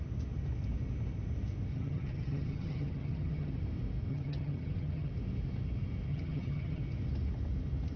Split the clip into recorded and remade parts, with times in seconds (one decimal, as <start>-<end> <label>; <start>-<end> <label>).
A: 0.0-1.7 recorded; 1.7-3.5 remade; 3.5-4.1 recorded; 4.1-5.1 remade; 5.1-6.1 recorded; 6.1-6.8 remade; 6.8-8.0 recorded

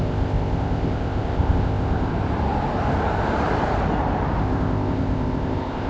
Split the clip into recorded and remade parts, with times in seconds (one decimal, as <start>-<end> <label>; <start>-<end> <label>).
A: 0.0-2.1 remade; 2.1-4.4 recorded; 4.4-5.9 remade

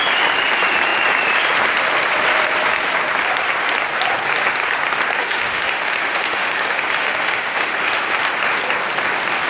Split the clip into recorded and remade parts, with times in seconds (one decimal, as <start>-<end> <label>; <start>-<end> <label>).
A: 0.0-5.2 recorded; 5.2-8.1 remade; 8.1-9.5 recorded